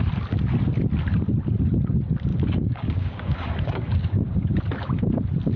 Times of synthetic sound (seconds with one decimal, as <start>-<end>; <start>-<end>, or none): 2.3-4.6